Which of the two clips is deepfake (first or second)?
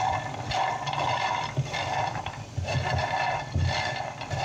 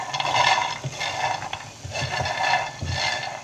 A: first